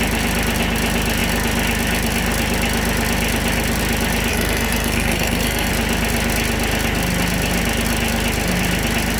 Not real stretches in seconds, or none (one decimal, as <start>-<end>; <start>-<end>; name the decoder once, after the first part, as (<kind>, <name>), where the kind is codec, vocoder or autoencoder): 4.3-5.7 (codec, SNAC)